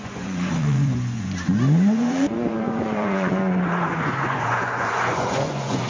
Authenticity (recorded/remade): remade